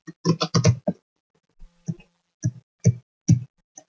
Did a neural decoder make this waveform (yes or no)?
no